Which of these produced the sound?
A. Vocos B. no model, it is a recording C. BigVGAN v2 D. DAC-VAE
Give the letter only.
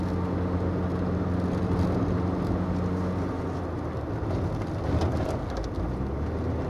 B